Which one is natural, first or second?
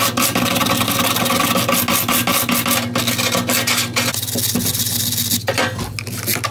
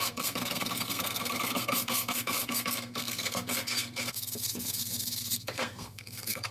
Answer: first